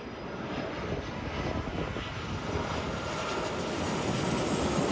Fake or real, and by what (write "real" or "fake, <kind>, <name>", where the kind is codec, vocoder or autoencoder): real